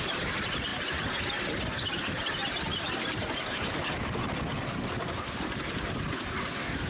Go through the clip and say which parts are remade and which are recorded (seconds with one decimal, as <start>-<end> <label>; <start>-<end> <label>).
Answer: 0.0-6.9 recorded